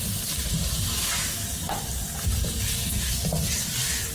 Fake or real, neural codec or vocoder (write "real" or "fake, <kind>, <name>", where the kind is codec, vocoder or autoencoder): real